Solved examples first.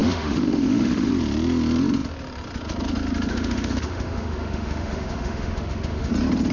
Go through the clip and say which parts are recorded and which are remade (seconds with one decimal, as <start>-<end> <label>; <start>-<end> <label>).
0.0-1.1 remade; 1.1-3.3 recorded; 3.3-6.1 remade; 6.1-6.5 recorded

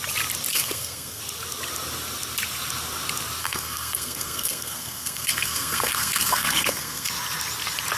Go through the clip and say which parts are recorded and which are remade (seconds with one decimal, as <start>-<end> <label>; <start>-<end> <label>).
0.0-0.5 recorded; 0.5-1.2 remade; 1.2-3.4 recorded; 3.4-7.1 remade; 7.1-8.0 recorded

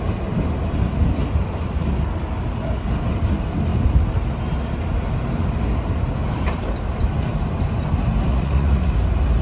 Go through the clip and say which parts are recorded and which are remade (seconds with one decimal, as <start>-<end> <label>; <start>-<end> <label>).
0.0-8.3 recorded; 8.3-8.9 remade; 8.9-9.4 recorded

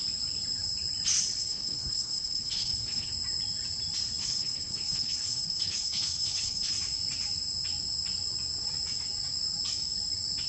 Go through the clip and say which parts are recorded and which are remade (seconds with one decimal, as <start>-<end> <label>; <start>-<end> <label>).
0.0-1.4 recorded; 1.4-3.1 remade; 3.1-4.2 recorded; 4.2-6.7 remade; 6.7-10.5 recorded

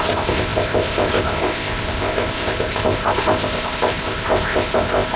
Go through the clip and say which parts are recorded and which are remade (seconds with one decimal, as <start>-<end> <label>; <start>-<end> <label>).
0.0-5.2 remade